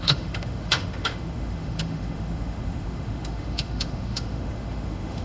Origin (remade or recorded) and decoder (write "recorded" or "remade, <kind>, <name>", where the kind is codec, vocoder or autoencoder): remade, autoencoder, DAC-VAE